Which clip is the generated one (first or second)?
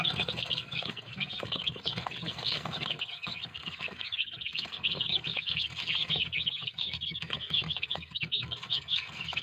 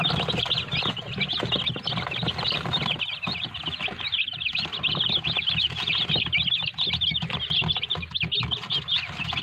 first